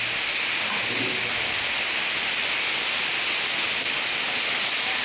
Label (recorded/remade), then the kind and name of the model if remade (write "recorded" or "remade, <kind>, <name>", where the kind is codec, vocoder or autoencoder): recorded